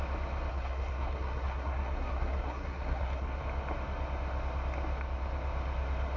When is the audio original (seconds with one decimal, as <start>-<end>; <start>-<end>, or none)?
0.0-0.5; 3.4-6.2

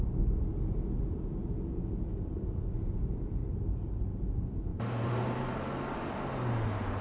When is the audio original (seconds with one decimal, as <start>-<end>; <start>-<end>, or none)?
0.0-3.4; 4.2-4.7; 5.5-7.0

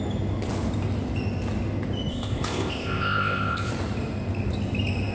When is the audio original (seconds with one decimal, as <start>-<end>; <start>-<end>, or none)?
0.0-2.1; 3.7-5.1

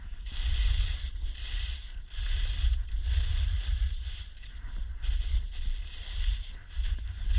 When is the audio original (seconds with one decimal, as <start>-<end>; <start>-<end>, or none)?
0.0-7.4